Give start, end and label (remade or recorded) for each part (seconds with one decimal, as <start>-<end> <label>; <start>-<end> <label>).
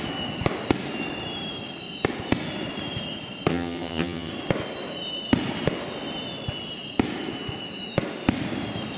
0.0-3.5 recorded; 3.5-4.3 remade; 4.3-9.0 recorded